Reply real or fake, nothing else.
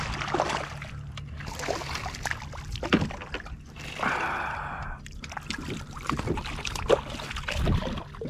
real